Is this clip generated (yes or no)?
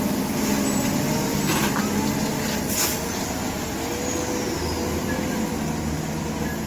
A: no